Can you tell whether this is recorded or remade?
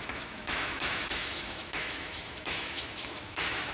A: remade